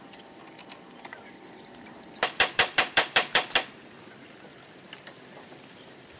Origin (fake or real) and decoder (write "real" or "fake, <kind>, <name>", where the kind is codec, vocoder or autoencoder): fake, vocoder, BigVGAN v2